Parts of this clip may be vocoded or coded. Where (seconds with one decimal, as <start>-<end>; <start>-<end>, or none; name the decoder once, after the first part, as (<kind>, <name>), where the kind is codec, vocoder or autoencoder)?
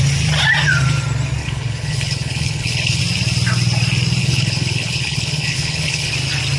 1.4-3.0 (codec, HILCodec); 4.2-6.1